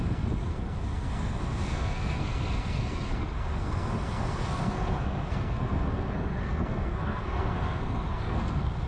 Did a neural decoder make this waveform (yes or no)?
yes